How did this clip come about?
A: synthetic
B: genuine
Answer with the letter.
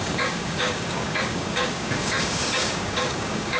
A